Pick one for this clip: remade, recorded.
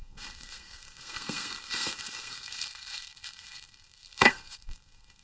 remade